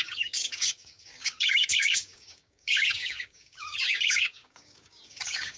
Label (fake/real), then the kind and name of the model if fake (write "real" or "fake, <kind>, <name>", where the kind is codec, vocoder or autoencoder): fake, codec, DAC